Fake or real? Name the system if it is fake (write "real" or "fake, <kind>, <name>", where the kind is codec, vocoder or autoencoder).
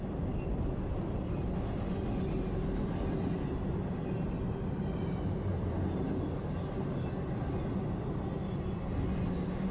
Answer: real